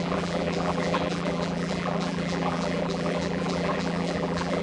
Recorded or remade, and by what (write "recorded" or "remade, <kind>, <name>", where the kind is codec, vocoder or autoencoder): remade, vocoder, BigVGAN v2